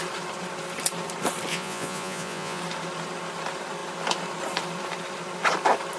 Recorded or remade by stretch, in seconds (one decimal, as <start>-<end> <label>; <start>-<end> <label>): 0.0-1.5 recorded; 1.5-2.6 remade; 2.6-6.0 recorded